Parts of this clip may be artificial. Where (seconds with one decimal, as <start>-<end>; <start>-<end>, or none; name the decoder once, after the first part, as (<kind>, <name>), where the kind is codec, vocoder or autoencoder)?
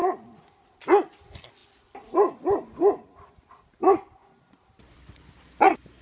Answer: none